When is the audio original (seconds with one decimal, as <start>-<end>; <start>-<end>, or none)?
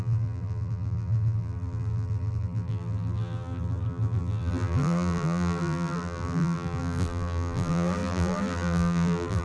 none